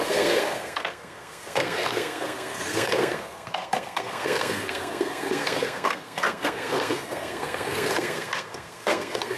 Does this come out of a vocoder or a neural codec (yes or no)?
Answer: yes